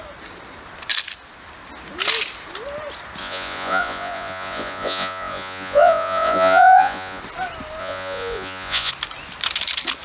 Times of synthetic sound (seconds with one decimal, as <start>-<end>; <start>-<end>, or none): 3.2-7.2; 7.8-8.9